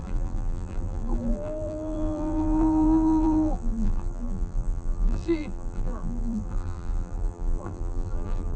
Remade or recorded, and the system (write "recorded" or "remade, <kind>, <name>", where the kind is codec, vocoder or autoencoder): remade, vocoder, BigVGAN v2